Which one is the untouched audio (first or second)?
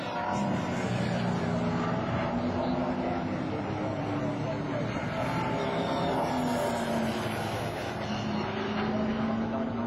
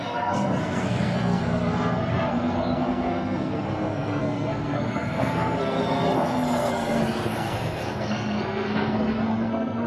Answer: first